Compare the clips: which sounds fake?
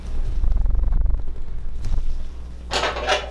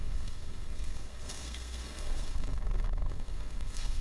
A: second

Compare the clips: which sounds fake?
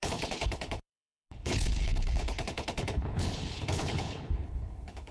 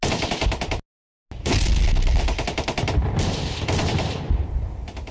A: first